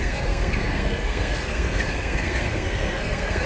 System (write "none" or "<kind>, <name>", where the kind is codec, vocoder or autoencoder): codec, SNAC